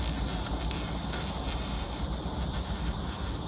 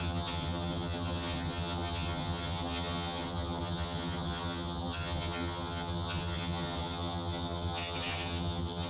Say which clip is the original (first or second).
first